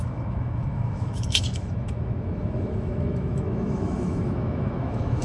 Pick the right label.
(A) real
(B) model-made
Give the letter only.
B